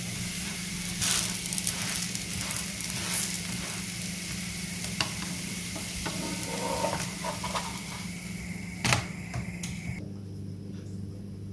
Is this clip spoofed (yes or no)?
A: no